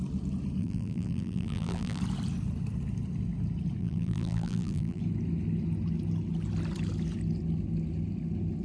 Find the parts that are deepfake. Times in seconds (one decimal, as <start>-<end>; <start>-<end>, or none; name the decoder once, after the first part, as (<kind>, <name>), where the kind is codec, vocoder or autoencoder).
0.6-2.0 (vocoder, BigVGAN v2); 3.8-5.0